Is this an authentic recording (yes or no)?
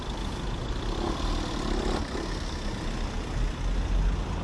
yes